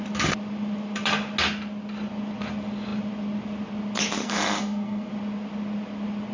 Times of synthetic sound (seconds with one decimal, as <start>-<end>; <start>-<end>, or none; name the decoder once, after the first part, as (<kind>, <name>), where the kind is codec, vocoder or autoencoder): 4.2-5.1 (codec, SNAC)